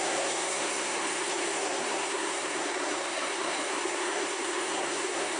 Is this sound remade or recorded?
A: remade